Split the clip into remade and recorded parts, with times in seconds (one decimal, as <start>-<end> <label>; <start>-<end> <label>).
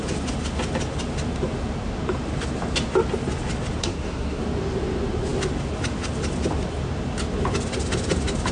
0.0-3.8 recorded; 3.8-4.4 remade; 4.4-8.5 recorded